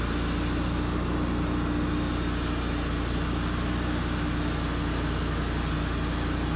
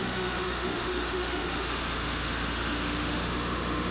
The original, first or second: first